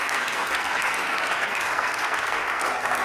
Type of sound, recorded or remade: remade